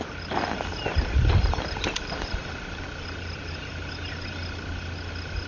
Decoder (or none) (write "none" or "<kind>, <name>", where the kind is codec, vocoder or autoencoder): none